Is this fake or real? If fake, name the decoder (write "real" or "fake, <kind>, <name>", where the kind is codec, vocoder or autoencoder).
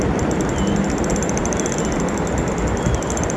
real